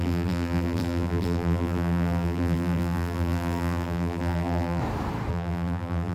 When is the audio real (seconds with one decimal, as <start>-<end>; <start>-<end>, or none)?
4.8-5.3